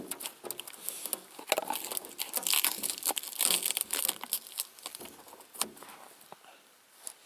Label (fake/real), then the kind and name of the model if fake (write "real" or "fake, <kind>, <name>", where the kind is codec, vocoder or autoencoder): real